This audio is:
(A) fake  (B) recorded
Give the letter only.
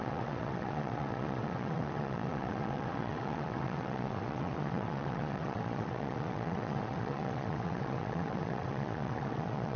A